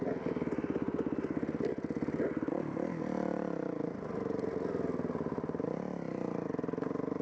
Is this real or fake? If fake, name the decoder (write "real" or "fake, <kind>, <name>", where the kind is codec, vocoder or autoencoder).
real